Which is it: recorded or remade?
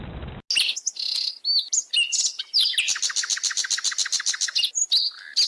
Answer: recorded